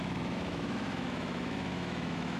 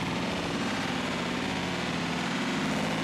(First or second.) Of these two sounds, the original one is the second